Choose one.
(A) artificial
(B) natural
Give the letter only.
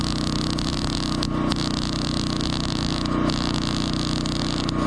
B